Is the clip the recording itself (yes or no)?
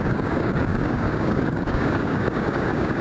no